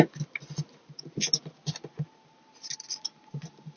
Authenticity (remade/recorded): recorded